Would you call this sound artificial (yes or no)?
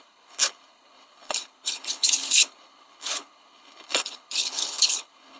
yes